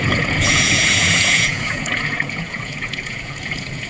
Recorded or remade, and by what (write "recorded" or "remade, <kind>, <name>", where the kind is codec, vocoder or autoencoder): remade, vocoder, Vocos